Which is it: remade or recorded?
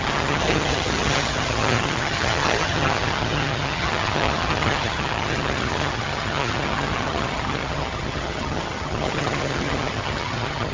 remade